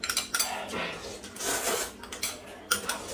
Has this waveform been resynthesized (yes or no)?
no